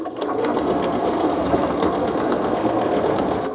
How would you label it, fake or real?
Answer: fake